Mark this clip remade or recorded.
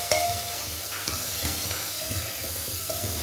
remade